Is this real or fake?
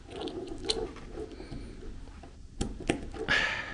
real